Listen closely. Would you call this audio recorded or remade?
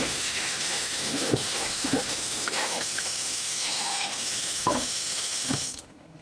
remade